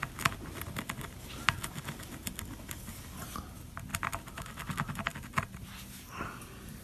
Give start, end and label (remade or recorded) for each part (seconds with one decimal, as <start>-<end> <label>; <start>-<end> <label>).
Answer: 0.0-6.8 recorded

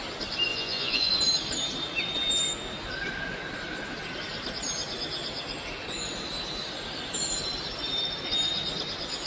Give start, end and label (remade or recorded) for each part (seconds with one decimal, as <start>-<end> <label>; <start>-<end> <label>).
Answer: 0.0-0.5 recorded; 0.5-1.1 remade; 1.1-9.3 recorded

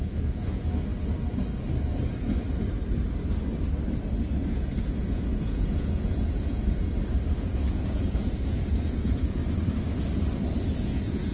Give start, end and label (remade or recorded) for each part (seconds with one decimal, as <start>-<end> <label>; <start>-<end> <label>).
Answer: 0.0-0.9 remade; 0.9-4.4 recorded; 4.4-6.8 remade; 6.8-7.4 recorded; 7.4-9.4 remade; 9.4-10.8 recorded; 10.8-11.3 remade

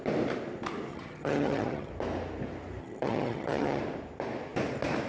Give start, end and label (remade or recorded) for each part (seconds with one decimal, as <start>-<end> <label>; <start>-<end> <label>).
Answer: 0.0-0.9 recorded; 0.9-1.9 remade; 1.9-2.8 recorded; 2.8-3.8 remade; 3.8-5.1 recorded

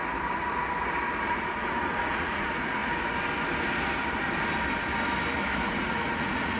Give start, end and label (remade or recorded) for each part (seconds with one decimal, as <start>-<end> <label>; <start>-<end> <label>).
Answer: 0.0-1.3 recorded; 1.3-2.8 remade; 2.8-5.7 recorded; 5.7-6.6 remade

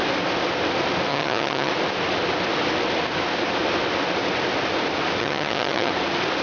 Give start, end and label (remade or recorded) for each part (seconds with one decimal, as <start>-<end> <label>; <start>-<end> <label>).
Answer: 0.0-1.1 recorded; 1.1-1.7 remade; 1.7-5.2 recorded; 5.2-5.9 remade; 5.9-6.4 recorded

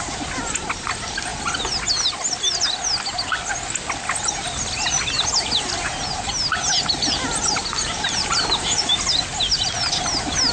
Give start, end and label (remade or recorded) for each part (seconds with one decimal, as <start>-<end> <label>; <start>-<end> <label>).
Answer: 0.0-7.8 recorded; 7.8-8.9 remade; 8.9-10.5 recorded

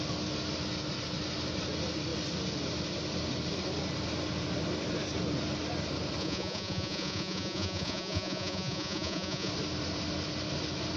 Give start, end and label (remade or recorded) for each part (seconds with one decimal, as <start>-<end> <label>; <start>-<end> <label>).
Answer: 0.0-6.2 recorded; 6.2-9.5 remade; 9.5-11.0 recorded